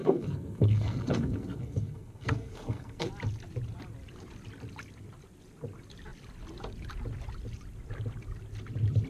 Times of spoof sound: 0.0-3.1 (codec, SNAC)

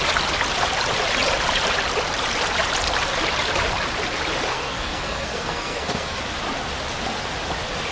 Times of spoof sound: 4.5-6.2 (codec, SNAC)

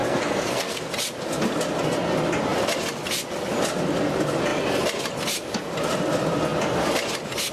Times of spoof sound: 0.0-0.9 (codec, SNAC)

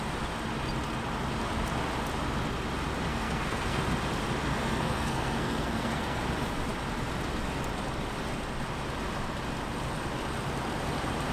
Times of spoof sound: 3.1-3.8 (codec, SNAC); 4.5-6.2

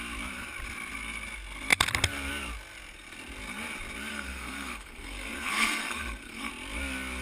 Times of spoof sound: 4.1-6.5 (codec, SNAC)